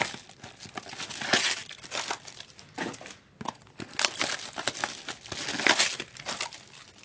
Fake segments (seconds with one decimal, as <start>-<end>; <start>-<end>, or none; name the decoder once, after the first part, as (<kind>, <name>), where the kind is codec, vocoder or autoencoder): none